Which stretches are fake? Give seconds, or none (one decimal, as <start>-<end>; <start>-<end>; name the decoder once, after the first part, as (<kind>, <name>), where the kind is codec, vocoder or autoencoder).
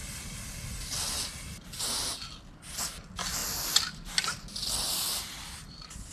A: none